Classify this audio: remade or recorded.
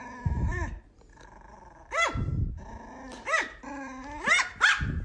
recorded